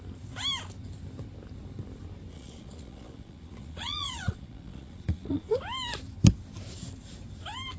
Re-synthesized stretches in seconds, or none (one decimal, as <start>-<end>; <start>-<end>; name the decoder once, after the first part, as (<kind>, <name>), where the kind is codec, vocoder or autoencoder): 2.3-5.6 (vocoder, Vocos)